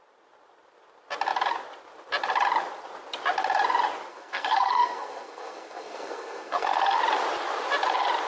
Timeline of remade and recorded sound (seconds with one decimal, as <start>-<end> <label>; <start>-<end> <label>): 0.0-4.1 recorded; 4.1-7.0 remade; 7.0-8.3 recorded